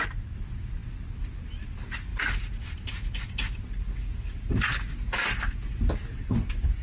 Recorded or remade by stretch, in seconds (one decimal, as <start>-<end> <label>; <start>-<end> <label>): 0.0-2.1 recorded; 2.1-2.6 remade; 2.6-3.0 recorded; 3.0-5.3 remade; 5.3-6.8 recorded